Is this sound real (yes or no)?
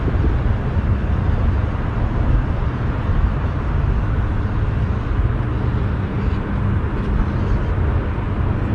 yes